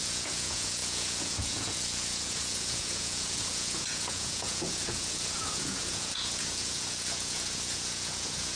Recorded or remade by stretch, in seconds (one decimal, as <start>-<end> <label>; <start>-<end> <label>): 0.0-8.6 remade